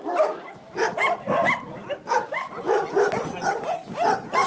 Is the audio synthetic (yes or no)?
no